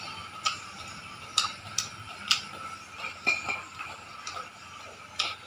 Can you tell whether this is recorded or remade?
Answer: recorded